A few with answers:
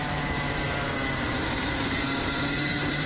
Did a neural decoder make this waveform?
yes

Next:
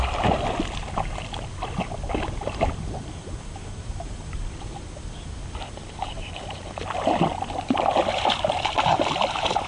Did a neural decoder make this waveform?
no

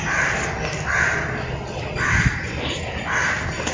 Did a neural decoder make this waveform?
no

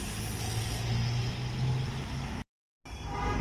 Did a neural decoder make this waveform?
no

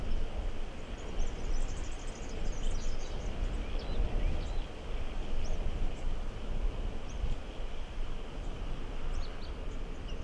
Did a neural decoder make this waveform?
no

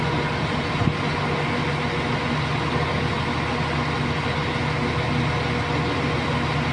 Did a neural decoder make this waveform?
no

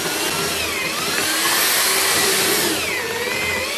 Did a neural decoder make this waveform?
no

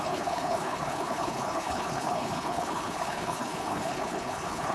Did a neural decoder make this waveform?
yes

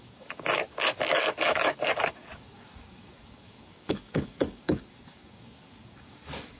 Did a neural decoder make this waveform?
yes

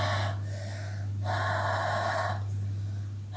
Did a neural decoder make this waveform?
no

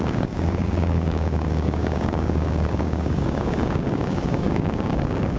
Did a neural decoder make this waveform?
yes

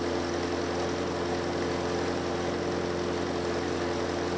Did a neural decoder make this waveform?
no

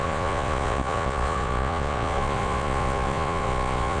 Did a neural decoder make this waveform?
yes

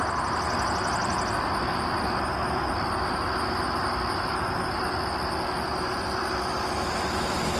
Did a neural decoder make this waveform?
no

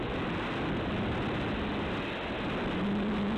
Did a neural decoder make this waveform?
no